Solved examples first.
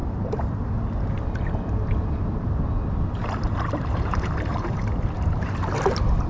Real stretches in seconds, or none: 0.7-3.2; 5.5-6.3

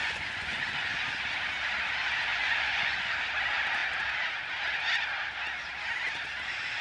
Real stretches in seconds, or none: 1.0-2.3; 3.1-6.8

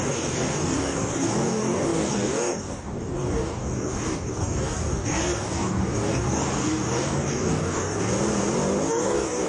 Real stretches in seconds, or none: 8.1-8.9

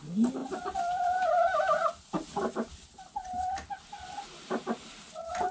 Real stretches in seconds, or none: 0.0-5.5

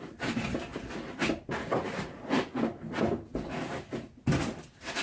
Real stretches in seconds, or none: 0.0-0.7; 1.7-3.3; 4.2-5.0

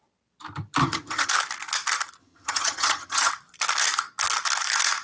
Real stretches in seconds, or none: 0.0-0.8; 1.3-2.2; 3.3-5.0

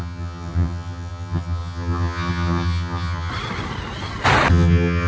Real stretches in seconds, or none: 3.3-4.5

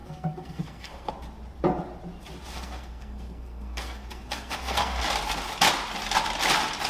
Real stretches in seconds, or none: 1.1-2.5; 5.0-6.9